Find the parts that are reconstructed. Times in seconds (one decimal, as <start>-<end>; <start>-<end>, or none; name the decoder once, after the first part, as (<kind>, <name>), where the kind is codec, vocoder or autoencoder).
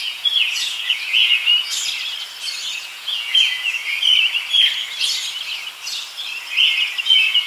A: 0.0-1.5 (vocoder, Vocos); 2.8-3.8; 7.0-7.5